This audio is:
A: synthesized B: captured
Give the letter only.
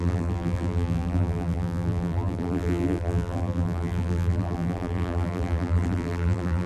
A